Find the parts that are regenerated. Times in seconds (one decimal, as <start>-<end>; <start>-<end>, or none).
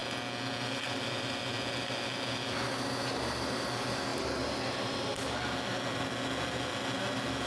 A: none